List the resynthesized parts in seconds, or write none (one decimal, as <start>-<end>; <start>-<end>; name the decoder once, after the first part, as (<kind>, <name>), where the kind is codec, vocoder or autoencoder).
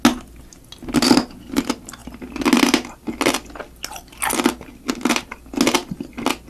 none